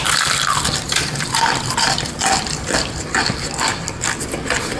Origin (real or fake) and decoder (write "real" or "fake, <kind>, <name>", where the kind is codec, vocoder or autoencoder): fake, vocoder, BigVGAN v2